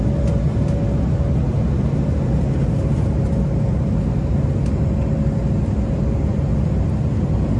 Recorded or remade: recorded